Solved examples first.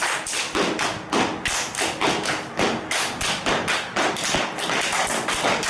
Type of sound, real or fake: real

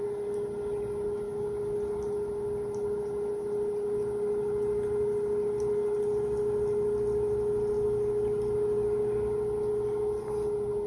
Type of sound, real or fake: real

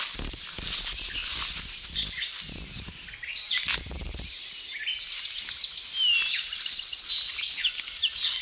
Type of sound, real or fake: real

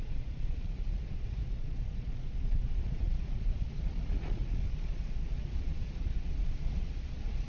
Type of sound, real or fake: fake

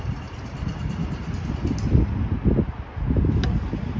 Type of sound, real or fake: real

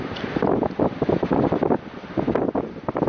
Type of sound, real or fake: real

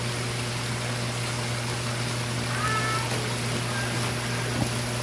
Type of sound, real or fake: real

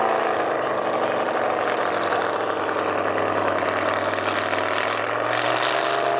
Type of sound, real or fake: real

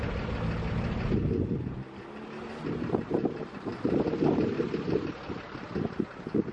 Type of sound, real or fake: real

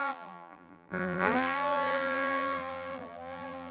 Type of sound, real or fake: fake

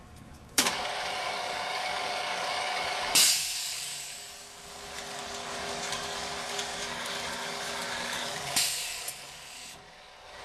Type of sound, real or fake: fake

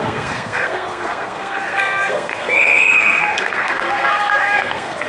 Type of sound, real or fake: fake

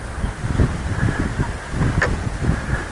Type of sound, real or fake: real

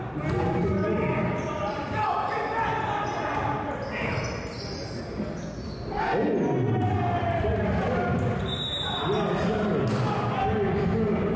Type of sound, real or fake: real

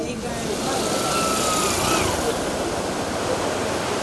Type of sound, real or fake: real